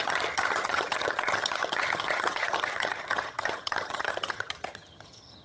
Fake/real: fake